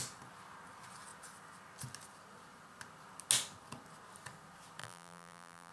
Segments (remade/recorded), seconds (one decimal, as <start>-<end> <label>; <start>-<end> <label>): 0.0-4.8 recorded; 4.8-5.7 remade